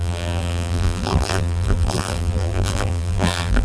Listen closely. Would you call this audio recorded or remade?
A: remade